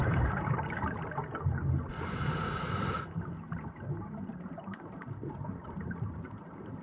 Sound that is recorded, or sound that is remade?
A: remade